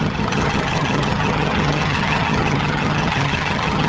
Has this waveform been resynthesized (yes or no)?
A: yes